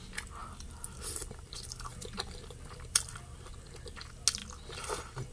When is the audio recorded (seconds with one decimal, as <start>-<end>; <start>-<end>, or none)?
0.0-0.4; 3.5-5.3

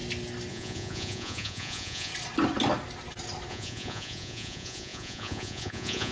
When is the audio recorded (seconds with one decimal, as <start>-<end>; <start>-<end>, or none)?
0.0-0.5; 2.1-3.5

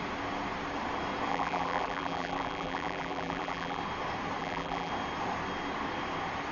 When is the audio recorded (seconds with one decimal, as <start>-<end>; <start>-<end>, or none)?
0.0-1.3; 3.8-4.4; 4.9-6.5

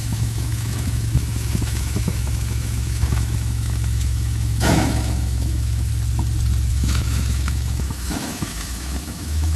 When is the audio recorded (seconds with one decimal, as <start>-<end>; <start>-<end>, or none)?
5.9-6.7

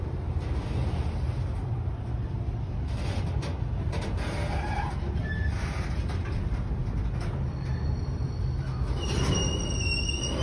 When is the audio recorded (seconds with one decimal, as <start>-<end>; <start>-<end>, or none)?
0.0-10.4

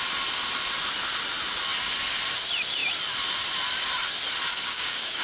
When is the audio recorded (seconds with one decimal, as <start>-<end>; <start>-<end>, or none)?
0.0-4.5

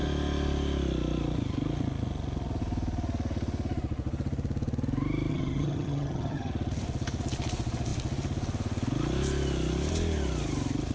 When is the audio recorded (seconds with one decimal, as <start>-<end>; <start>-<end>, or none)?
0.0-5.3; 6.5-10.9